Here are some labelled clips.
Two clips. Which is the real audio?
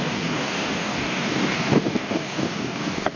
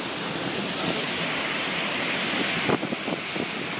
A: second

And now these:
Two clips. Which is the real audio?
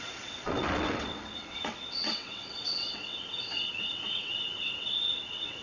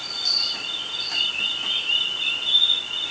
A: second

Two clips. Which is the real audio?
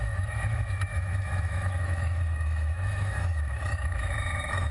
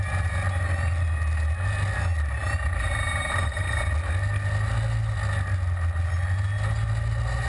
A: second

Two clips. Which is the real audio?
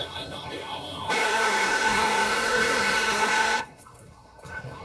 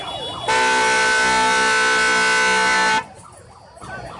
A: second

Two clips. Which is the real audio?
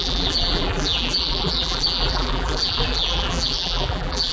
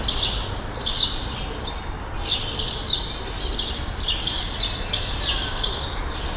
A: second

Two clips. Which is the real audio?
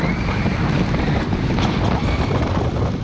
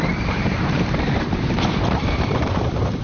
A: first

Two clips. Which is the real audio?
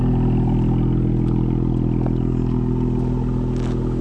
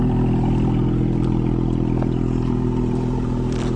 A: first